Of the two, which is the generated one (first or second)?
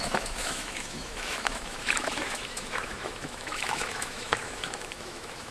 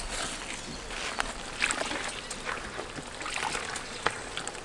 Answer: first